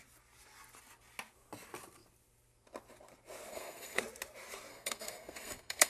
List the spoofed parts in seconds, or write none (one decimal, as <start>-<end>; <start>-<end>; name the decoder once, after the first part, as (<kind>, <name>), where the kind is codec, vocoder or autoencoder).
3.5-4.0 (codec, SNAC); 4.7-5.9